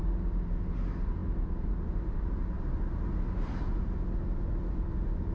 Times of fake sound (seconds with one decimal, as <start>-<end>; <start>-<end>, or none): none